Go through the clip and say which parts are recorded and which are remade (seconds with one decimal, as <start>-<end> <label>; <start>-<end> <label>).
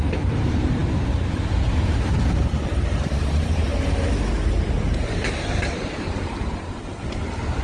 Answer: 0.0-7.6 remade